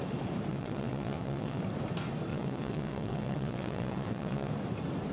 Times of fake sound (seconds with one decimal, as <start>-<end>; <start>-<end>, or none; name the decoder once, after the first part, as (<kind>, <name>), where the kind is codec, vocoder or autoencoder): 0.5-1.6 (vocoder, WaveNeXt); 2.3-4.5